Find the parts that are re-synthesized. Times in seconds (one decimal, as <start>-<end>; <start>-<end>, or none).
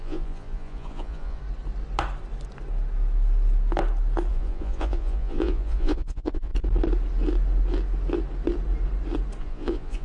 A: 0.0-1.4; 4.3-6.5; 9.4-10.0